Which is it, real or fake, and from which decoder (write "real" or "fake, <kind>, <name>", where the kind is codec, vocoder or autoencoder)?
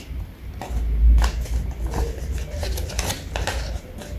real